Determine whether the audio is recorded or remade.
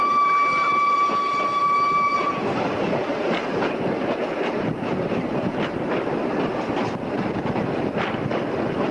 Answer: recorded